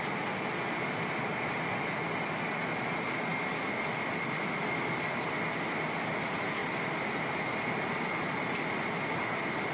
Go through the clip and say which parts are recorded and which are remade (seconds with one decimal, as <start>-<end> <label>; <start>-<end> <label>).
0.0-9.7 recorded